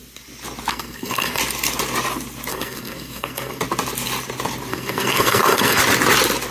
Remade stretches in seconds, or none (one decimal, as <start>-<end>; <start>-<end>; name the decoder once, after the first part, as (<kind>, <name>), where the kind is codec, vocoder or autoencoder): 0.7-1.4 (codec, SNAC); 2.5-3.6; 4.7-5.8

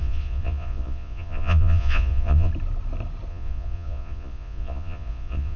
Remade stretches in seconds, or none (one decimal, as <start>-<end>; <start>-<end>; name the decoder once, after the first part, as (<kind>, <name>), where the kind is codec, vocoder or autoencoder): 0.0-2.5 (vocoder, Vocos); 3.3-5.6